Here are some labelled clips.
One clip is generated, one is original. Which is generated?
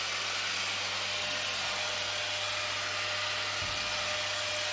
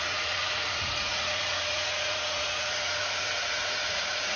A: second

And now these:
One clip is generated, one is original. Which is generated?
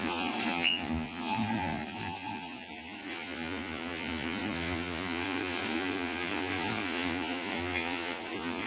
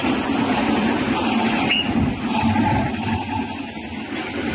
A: first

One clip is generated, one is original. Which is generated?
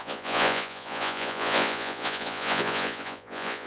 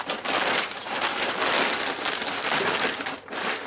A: first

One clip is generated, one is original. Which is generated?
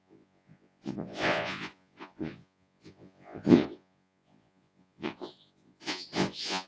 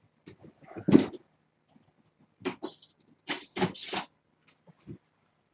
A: first